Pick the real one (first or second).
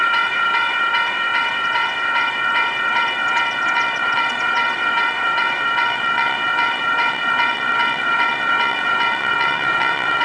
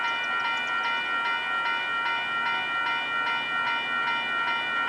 second